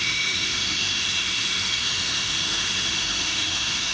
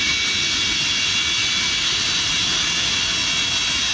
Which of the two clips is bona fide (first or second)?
second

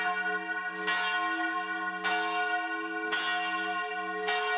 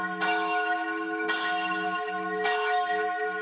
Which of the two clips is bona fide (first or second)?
first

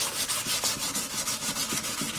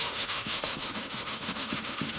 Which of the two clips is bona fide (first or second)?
first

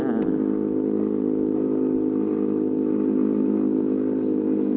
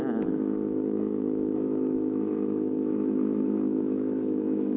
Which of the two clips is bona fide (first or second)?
first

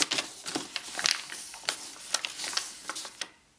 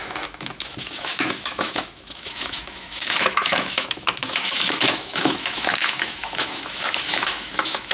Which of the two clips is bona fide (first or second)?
first